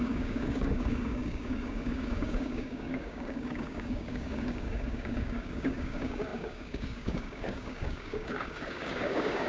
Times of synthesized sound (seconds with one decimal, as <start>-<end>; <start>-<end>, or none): 0.0-9.5

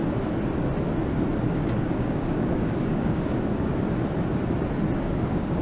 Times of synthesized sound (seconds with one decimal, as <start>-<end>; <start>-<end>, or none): 1.5-3.7; 5.0-5.6

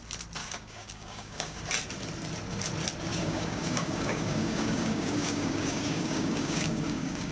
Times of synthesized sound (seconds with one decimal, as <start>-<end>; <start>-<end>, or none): 0.4-1.6; 3.1-7.3

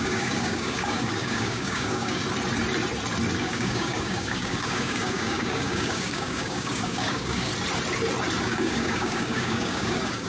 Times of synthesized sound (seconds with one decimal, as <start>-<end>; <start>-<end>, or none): 0.0-2.2; 3.4-7.5; 8.4-10.3

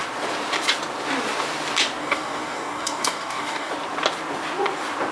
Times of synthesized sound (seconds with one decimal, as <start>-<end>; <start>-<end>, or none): 2.0-3.7

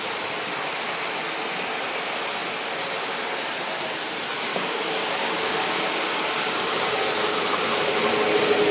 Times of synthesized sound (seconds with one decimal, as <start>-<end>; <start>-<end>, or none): 4.5-7.0

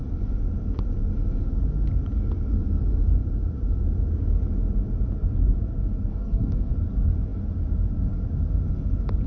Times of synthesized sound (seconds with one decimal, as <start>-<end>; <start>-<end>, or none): 6.1-6.7